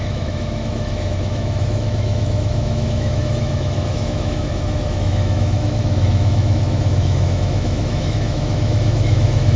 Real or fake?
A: fake